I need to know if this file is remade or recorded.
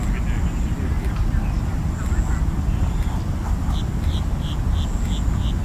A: recorded